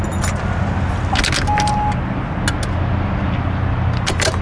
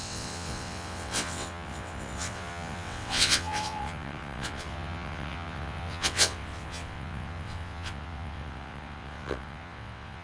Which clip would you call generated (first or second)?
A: second